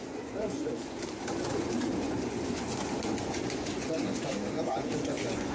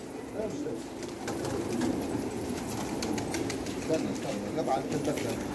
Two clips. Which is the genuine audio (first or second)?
second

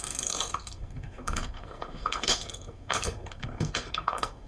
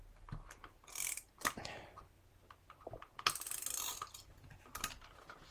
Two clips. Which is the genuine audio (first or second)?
second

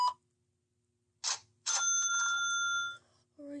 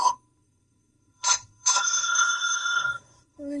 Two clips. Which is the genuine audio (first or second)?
first